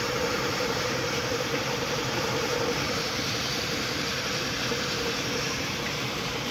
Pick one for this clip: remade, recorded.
remade